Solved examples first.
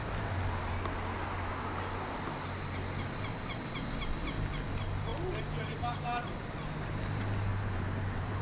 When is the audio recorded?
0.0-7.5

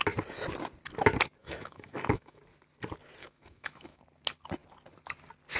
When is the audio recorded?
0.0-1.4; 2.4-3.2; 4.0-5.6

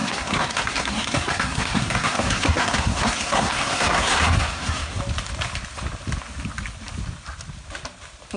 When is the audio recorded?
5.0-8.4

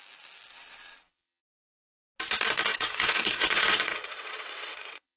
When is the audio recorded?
0.0-0.5; 1.4-2.7